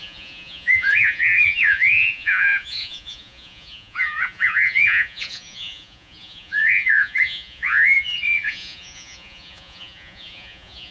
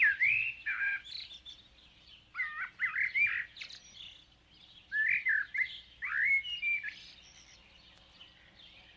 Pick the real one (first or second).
second